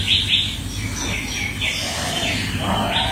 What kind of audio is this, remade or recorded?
recorded